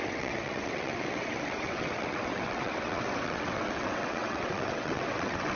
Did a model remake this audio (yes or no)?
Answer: yes